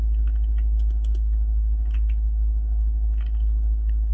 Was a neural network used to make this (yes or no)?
no